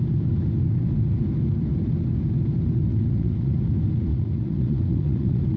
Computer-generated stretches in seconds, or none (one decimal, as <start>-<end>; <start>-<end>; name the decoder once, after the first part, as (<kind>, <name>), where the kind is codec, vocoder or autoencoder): 2.9-3.6 (vocoder, Vocos); 4.1-5.6